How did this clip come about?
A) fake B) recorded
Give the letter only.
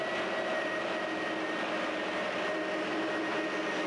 B